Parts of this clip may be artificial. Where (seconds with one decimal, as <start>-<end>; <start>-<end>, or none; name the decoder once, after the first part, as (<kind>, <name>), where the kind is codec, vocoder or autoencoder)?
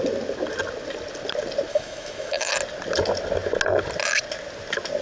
1.7-2.5 (autoencoder, DAC-VAE)